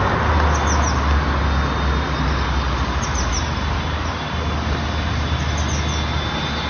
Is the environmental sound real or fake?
real